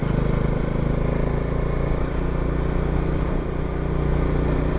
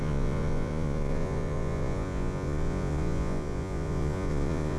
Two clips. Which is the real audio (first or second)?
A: first